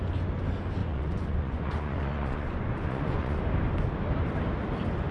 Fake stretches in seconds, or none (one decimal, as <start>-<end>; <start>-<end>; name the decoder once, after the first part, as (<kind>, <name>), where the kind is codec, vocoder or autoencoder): 0.8-3.4 (vocoder, Vocos)